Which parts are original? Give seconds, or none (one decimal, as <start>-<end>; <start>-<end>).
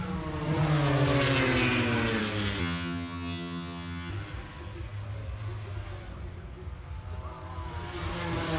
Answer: 0.0-2.6; 4.1-8.6